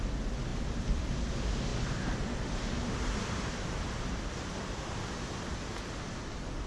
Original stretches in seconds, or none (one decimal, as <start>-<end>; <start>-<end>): 0.0-6.7